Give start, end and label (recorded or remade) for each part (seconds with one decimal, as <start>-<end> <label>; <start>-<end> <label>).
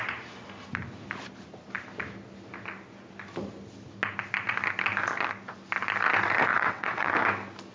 0.0-6.5 recorded; 6.5-7.1 remade; 7.1-7.7 recorded